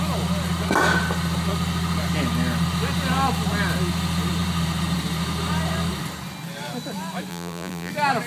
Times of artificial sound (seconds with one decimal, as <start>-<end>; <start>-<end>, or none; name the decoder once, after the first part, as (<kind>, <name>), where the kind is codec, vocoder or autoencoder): 7.3-7.9 (vocoder, BigVGAN v2)